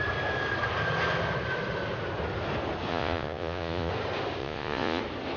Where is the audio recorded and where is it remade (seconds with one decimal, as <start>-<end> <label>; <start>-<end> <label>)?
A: 0.0-2.9 recorded; 2.9-3.9 remade; 3.9-4.4 recorded; 4.4-5.0 remade; 5.0-5.4 recorded